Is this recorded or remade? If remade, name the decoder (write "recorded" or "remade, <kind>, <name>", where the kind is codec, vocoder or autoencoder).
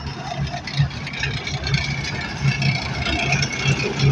recorded